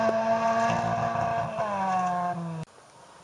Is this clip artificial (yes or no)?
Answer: no